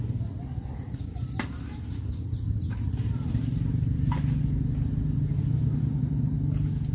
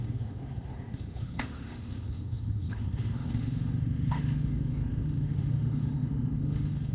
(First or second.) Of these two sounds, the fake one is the second